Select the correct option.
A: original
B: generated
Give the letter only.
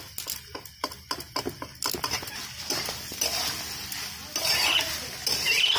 A